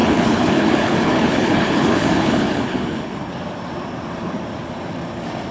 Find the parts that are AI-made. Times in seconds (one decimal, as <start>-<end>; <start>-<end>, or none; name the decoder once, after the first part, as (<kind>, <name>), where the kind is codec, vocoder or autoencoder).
0.0-3.3 (codec, HILCodec)

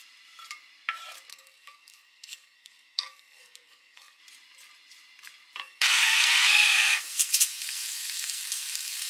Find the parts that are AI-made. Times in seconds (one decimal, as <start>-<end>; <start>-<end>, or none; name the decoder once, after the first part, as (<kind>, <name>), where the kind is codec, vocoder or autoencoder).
1.3-4.2 (codec, SNAC); 5.6-9.1

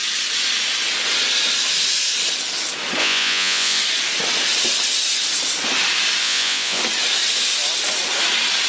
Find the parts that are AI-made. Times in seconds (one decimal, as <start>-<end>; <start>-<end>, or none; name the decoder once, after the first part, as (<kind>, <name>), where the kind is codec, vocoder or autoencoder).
3.0-3.8 (vocoder, Vocos); 6.2-6.8

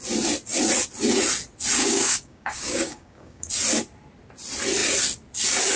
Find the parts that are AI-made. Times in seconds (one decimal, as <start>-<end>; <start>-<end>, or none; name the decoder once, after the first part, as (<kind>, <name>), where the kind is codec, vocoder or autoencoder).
1.8-3.5 (codec, DAC)

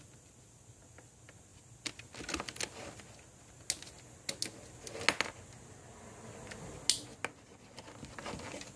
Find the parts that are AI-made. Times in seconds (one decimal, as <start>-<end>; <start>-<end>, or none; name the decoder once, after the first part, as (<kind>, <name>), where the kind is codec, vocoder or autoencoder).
none

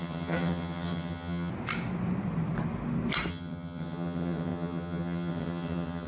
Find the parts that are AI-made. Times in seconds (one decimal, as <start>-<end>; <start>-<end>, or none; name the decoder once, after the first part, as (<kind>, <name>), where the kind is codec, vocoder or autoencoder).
0.0-1.5 (vocoder, HiFi-GAN); 3.3-6.1

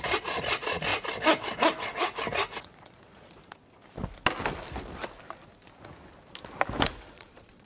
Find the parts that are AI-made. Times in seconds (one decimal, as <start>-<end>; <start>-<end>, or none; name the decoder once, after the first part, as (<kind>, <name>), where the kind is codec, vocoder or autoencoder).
0.0-0.9 (vocoder, Vocos); 2.6-3.4; 7.1-7.7